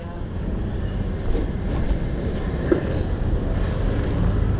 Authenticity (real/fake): real